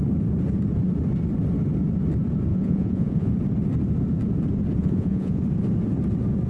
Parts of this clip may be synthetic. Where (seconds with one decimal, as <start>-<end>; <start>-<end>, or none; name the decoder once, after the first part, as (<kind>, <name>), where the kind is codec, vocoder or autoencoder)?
2.5-3.3 (vocoder, Vocos); 4.8-5.4